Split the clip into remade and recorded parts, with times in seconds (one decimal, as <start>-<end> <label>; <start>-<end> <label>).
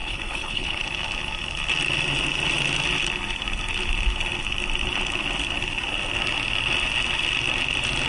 0.0-0.8 remade; 0.8-8.1 recorded